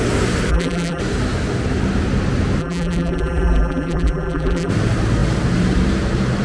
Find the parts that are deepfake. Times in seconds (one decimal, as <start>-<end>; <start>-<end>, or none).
0.5-1.0; 2.6-4.7